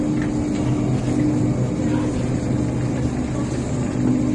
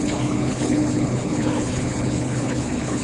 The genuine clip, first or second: first